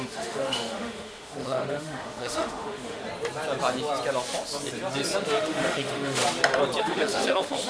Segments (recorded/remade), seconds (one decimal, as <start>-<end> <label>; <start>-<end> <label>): 0.0-3.0 remade; 3.0-5.2 recorded; 5.2-6.2 remade; 6.2-6.8 recorded; 6.8-7.7 remade